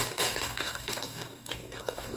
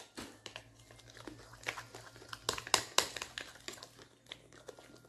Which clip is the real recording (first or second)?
second